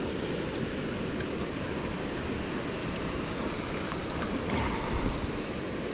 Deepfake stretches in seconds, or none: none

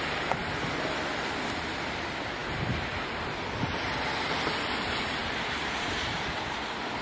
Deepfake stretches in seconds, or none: 5.2-6.6 (vocoder, BigVGAN v2)

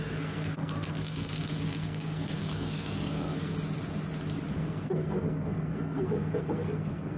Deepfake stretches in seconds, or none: 0.0-3.5 (codec, SNAC); 4.5-7.2

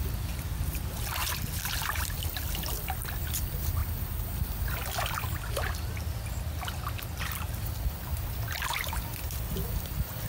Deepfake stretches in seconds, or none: none

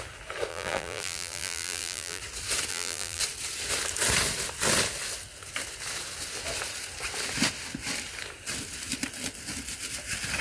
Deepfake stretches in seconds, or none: 0.5-2.2 (vocoder, BigVGAN v2); 2.7-3.2